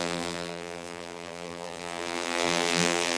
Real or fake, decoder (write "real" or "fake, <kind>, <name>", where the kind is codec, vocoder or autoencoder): fake, vocoder, BigVGAN v2